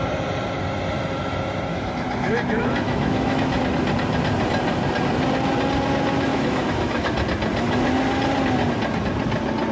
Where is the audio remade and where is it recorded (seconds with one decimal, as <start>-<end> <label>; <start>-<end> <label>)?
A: 0.0-1.7 recorded; 1.7-3.6 remade; 3.6-6.3 recorded; 6.3-7.2 remade; 7.2-9.7 recorded